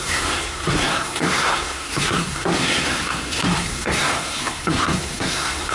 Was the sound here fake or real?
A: fake